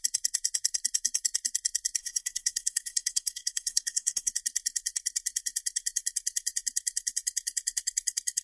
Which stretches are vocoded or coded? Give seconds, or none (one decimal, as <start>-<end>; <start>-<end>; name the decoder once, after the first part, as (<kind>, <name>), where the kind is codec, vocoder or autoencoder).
2.0-4.3 (codec, SNAC)